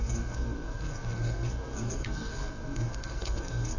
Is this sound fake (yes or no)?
yes